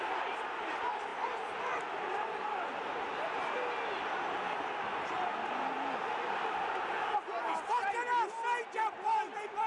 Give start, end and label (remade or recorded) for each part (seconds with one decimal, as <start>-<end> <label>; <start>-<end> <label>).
0.0-9.7 recorded